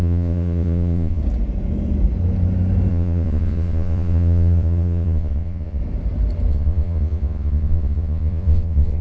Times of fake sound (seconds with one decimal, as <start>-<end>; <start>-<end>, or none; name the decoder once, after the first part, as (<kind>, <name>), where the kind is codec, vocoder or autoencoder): 0.0-1.2 (vocoder, Vocos); 2.9-5.8; 6.5-9.0